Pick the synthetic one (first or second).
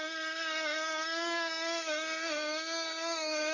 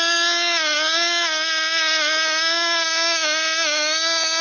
first